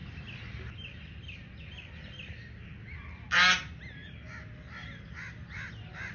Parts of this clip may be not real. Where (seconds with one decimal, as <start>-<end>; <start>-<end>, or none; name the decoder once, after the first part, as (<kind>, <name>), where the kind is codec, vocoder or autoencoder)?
none